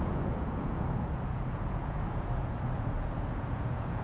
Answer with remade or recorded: remade